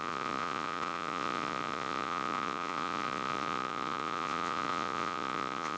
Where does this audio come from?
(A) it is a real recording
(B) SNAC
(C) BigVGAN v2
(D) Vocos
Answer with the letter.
D